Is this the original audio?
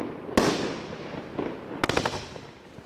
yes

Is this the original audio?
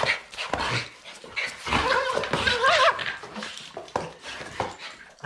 yes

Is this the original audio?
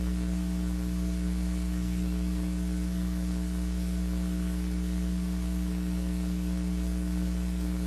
no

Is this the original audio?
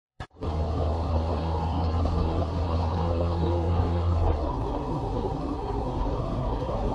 no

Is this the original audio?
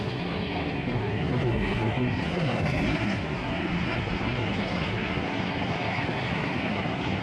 no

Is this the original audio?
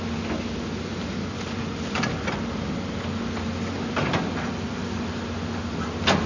yes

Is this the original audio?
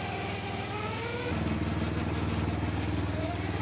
yes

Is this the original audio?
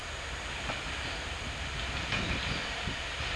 yes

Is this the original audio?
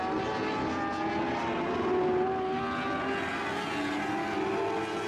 yes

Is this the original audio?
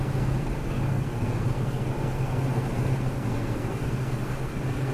no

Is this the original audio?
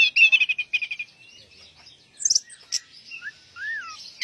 yes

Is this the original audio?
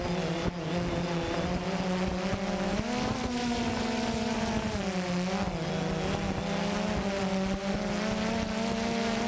yes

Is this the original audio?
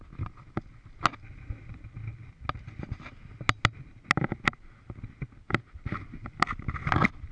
yes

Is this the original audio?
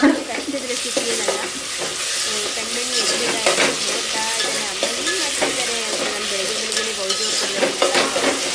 yes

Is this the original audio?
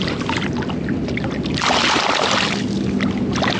yes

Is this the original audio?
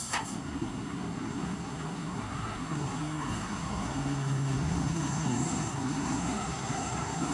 no